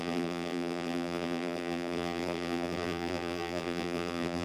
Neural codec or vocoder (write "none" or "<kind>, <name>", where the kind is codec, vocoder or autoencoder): vocoder, BigVGAN v2